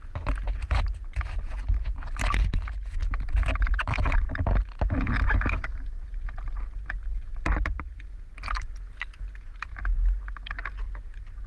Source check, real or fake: real